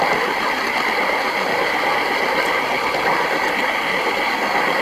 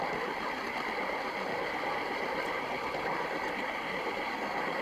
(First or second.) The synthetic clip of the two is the second